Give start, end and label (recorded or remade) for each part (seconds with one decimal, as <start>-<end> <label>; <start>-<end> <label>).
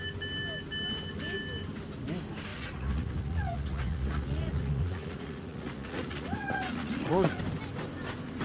0.0-2.5 recorded; 2.5-7.4 remade; 7.4-8.4 recorded